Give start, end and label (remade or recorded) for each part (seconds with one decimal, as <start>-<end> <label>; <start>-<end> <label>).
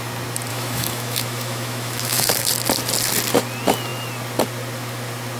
0.0-0.5 recorded; 0.5-2.5 remade; 2.5-5.4 recorded